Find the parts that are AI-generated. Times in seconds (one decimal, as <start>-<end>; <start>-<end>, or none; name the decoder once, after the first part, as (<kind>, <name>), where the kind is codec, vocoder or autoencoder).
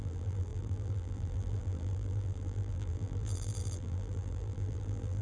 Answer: 0.0-5.2 (vocoder, BigVGAN v2)